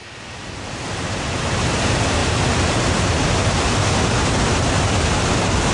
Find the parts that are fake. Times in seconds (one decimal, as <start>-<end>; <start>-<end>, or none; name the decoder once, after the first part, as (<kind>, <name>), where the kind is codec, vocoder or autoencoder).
none